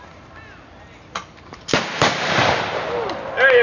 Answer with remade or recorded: recorded